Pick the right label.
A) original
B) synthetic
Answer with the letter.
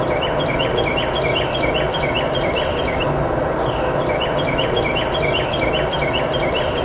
B